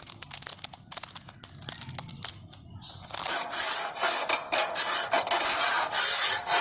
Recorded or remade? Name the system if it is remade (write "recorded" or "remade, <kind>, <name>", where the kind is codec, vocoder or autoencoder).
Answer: recorded